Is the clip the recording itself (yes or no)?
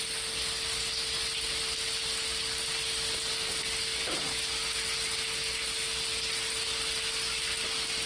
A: yes